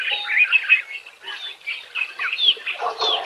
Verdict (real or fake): real